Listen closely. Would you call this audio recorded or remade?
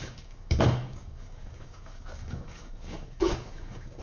remade